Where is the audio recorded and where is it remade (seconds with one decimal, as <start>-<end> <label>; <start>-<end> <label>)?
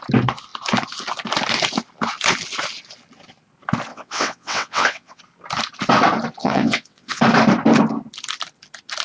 0.0-3.9 recorded; 3.9-5.2 remade; 5.2-6.4 recorded; 6.4-7.2 remade; 7.2-9.0 recorded